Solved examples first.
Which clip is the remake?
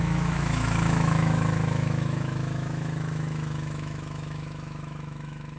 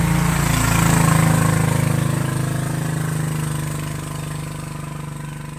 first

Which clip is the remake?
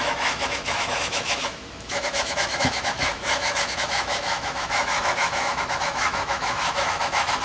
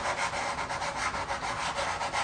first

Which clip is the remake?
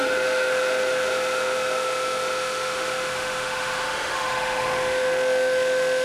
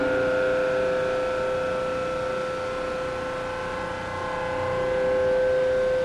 first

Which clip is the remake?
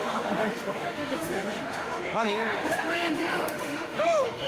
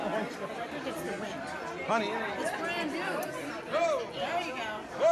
first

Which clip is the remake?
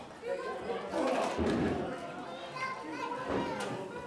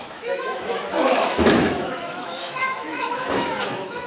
second